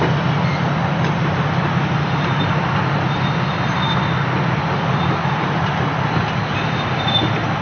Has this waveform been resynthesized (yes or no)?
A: no